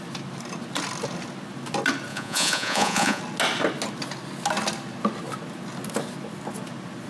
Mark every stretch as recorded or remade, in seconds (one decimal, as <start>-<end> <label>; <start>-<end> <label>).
0.0-2.1 recorded; 2.1-3.2 remade; 3.2-7.1 recorded